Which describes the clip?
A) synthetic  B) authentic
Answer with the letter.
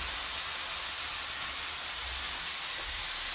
B